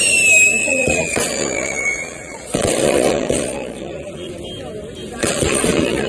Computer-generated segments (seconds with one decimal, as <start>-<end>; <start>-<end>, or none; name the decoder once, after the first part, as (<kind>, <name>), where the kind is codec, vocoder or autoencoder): 0.6-4.3 (vocoder, Vocos); 5.2-6.1